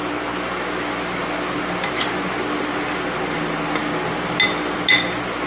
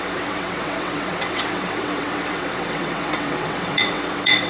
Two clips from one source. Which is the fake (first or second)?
second